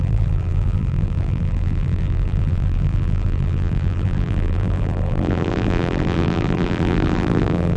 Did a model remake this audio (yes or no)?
yes